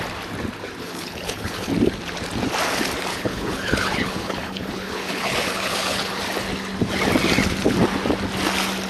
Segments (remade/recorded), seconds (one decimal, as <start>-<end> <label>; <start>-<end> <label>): 0.0-0.8 recorded; 0.8-1.7 remade; 1.7-3.1 recorded; 3.1-6.2 remade; 6.2-8.9 recorded